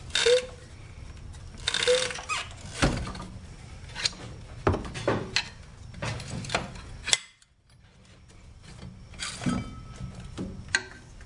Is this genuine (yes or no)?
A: yes